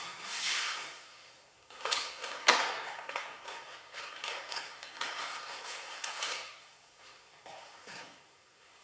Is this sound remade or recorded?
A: remade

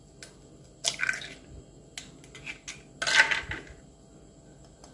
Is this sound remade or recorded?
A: recorded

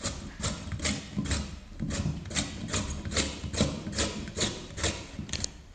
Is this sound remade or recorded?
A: recorded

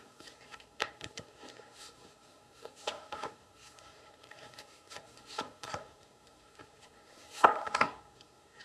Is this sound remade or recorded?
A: remade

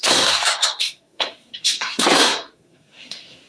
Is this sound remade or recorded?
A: remade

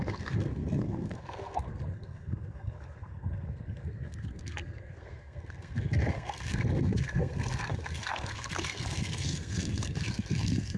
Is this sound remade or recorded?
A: remade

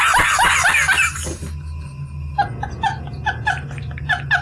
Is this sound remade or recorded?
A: recorded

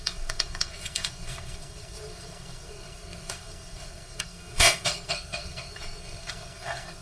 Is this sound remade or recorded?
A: remade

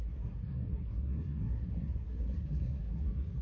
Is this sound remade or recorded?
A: remade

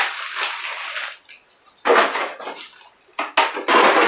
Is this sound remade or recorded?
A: recorded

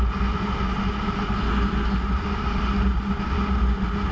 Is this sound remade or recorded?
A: recorded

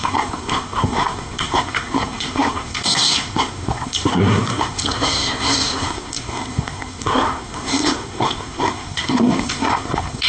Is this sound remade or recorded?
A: remade